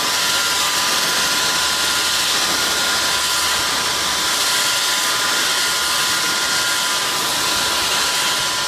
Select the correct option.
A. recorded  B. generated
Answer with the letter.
A